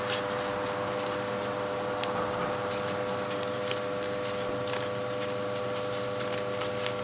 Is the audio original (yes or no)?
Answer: yes